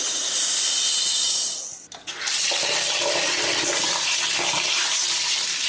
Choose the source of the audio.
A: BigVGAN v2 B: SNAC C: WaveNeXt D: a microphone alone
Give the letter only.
D